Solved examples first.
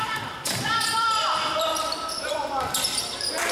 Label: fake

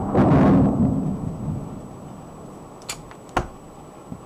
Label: real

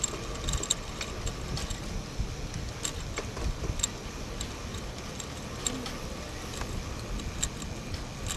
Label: real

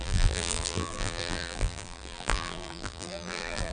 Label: fake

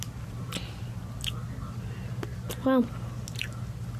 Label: real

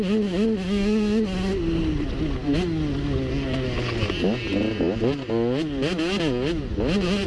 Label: real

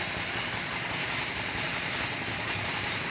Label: fake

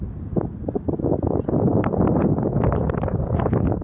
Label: real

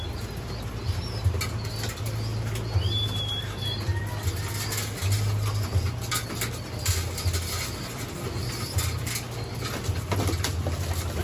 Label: real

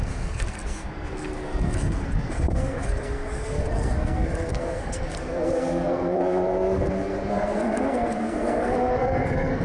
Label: fake